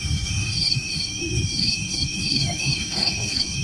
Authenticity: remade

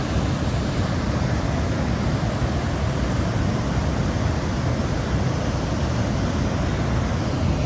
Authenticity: recorded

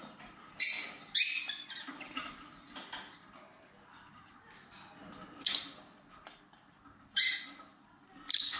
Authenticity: remade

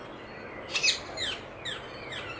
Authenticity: recorded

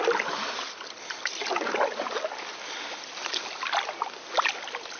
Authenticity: recorded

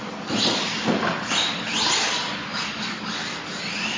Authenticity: recorded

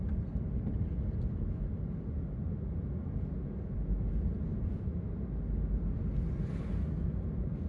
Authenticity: recorded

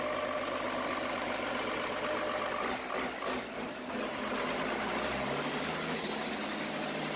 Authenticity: recorded